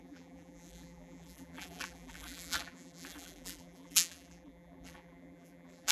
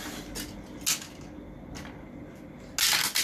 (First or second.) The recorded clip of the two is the second